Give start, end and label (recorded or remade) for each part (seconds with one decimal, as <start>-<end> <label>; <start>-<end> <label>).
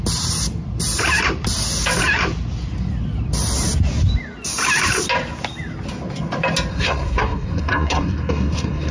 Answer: 0.0-6.7 recorded; 6.7-8.9 remade